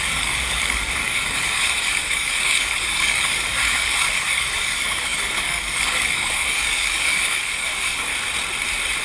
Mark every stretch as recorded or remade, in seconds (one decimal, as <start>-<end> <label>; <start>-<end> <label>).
0.0-8.1 remade; 8.1-9.0 recorded